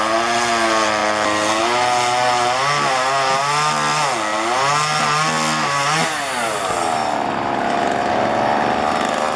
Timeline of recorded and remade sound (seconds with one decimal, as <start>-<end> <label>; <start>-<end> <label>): 0.0-9.4 recorded